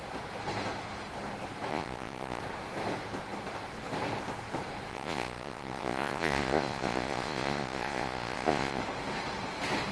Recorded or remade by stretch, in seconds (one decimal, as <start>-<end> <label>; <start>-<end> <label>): 0.0-1.7 recorded; 1.7-2.4 remade; 2.4-4.9 recorded; 4.9-8.8 remade; 8.8-9.9 recorded